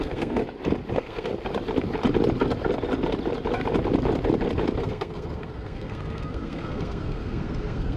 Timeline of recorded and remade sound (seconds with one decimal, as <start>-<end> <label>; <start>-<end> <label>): 0.0-0.4 remade; 0.4-0.9 recorded; 0.9-1.3 remade; 1.3-4.8 recorded; 4.8-8.0 remade